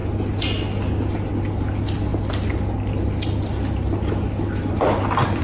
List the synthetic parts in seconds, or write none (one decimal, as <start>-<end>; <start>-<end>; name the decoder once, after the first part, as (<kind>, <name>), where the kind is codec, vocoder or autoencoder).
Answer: none